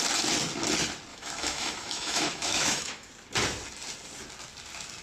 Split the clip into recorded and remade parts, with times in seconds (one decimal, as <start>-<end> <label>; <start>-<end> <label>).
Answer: 0.0-1.1 recorded; 1.1-3.1 remade; 3.1-5.0 recorded